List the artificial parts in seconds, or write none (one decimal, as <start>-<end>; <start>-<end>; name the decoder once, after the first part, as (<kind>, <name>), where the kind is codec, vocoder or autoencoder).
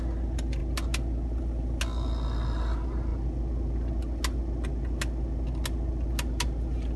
none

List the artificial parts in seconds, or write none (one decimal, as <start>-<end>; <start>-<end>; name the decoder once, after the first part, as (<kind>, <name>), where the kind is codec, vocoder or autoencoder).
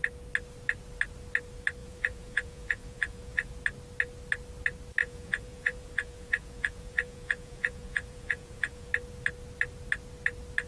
1.8-3.5 (vocoder, Vocos); 5.0-8.9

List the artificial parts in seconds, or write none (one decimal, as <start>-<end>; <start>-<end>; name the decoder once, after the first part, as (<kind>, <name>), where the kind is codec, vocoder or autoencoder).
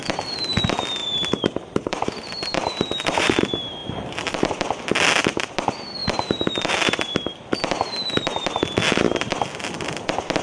1.0-3.4 (vocoder, BigVGAN v2); 3.8-4.5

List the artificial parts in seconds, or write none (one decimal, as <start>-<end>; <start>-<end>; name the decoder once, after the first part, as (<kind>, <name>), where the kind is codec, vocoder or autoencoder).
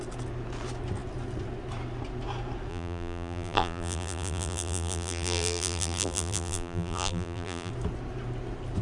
2.7-7.7 (vocoder, BigVGAN v2)